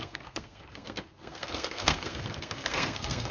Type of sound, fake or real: fake